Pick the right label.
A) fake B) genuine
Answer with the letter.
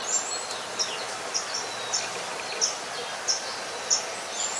B